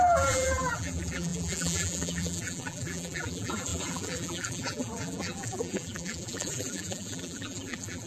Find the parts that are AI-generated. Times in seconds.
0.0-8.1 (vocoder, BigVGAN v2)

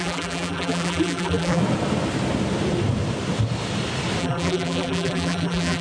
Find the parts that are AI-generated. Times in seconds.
0.0-1.6 (vocoder, BigVGAN v2); 4.2-5.8